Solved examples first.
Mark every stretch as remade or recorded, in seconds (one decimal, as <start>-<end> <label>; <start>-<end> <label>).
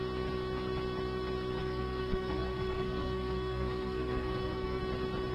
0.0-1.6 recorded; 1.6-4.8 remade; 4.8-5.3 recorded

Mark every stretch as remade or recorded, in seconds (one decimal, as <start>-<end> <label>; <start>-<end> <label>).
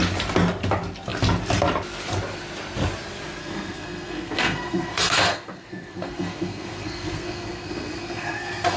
0.0-3.4 recorded; 3.4-8.8 remade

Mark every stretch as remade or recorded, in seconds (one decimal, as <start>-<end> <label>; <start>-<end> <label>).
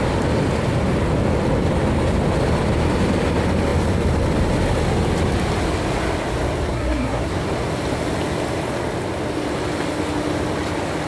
0.0-6.7 recorded; 6.7-7.3 remade; 7.3-11.1 recorded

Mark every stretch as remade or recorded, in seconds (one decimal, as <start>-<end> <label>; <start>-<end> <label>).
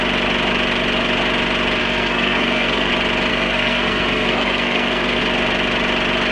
0.0-1.8 recorded; 1.8-2.9 remade; 2.9-3.3 recorded; 3.3-5.2 remade; 5.2-6.3 recorded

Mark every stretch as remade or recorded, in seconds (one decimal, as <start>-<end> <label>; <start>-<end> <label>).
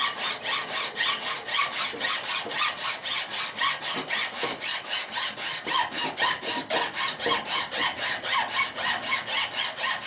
0.0-10.1 recorded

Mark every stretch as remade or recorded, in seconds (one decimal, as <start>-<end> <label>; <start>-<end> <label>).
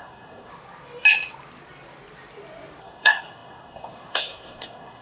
0.0-0.5 remade; 0.5-2.8 recorded; 2.8-5.0 remade